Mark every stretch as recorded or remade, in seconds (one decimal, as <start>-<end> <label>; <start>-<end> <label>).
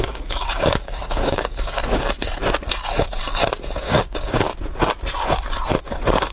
0.0-1.8 remade; 1.8-3.8 recorded; 3.8-4.5 remade; 4.5-5.8 recorded; 5.8-6.3 remade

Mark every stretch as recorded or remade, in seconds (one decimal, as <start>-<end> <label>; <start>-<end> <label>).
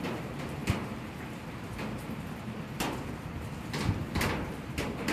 0.0-5.1 recorded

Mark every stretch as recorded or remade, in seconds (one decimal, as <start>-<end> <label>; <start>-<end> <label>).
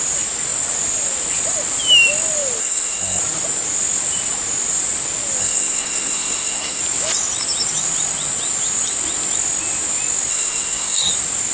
0.0-2.6 recorded; 2.6-3.2 remade; 3.2-5.4 recorded; 5.4-6.8 remade; 6.8-10.3 recorded; 10.3-11.1 remade; 11.1-11.5 recorded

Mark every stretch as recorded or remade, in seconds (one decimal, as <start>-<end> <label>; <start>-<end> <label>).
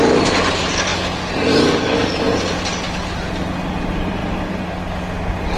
0.0-4.2 recorded; 4.2-4.7 remade; 4.7-5.6 recorded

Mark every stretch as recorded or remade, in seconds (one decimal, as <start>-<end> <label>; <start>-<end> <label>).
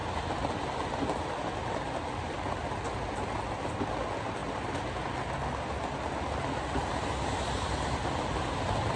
0.0-9.0 recorded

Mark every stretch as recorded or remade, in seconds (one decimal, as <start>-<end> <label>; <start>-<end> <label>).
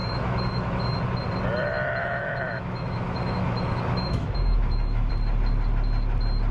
0.0-1.0 remade; 1.0-2.0 recorded; 2.0-5.1 remade; 5.1-6.5 recorded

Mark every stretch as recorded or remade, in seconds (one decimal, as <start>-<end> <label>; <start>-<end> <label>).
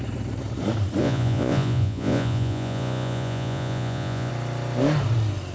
0.0-1.0 recorded; 1.0-4.3 remade; 4.3-5.5 recorded